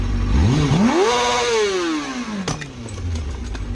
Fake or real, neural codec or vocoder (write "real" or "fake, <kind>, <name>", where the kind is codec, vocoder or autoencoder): real